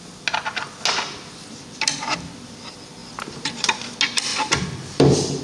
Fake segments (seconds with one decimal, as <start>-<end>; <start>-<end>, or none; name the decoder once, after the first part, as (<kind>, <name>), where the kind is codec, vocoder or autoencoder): 3.0-3.9 (vocoder, BigVGAN v2); 4.3-5.4